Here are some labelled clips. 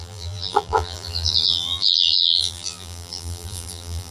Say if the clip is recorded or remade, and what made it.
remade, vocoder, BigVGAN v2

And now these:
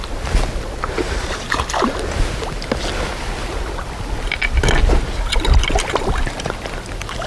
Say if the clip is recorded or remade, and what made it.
recorded